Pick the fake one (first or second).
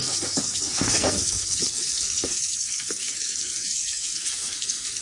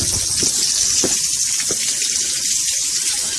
first